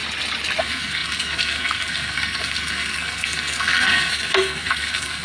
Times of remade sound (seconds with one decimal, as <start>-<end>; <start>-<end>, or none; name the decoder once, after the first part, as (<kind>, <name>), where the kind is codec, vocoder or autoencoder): 0.6-5.2 (codec, SNAC)